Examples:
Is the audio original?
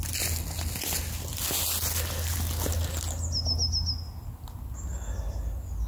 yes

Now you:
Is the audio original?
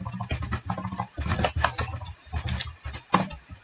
yes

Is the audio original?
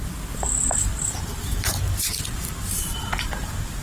yes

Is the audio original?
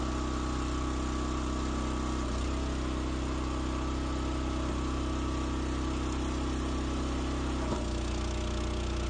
yes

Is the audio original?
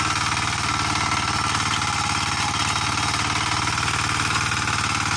yes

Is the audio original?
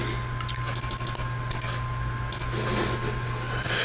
yes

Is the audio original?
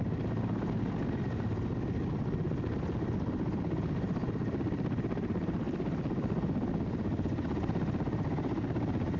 yes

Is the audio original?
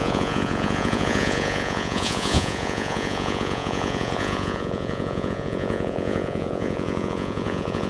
no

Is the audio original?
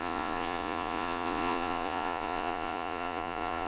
no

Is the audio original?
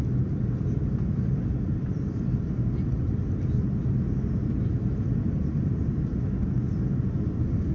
yes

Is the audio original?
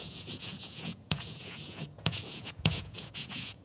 no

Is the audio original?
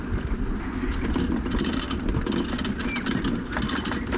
yes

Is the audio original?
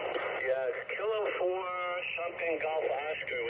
yes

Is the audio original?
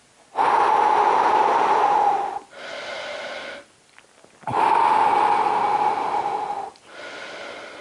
yes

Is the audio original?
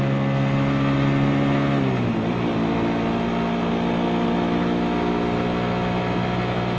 yes